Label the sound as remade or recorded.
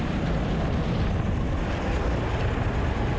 recorded